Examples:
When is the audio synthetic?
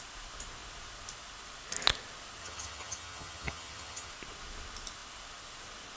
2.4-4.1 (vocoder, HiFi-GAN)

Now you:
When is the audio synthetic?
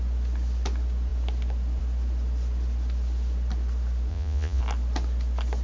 4.1-4.6 (vocoder, Vocos)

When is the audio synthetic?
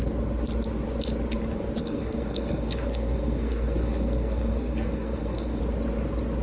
1.8-5.6 (codec, SNAC)